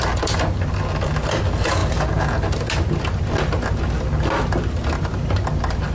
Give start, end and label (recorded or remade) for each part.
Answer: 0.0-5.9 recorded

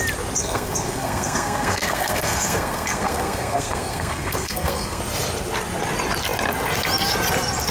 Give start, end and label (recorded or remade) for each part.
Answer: 0.0-0.4 recorded; 0.4-5.0 remade; 5.0-7.7 recorded

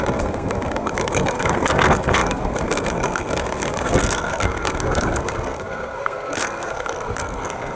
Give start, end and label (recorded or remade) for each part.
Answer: 0.0-7.8 remade

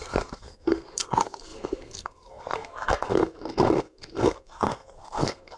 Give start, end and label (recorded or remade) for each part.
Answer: 0.0-5.6 remade

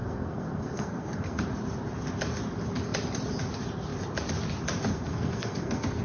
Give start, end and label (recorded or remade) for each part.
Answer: 0.0-1.4 remade; 1.4-4.9 recorded; 4.9-6.0 remade